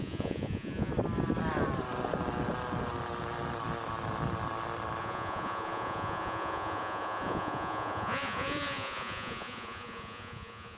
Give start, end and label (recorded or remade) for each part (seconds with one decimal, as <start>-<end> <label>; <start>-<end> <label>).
0.0-0.9 remade; 0.9-5.0 recorded; 5.0-10.8 remade